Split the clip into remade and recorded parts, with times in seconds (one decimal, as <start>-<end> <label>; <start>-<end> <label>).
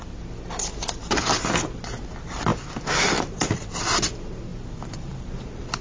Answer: 0.0-5.8 recorded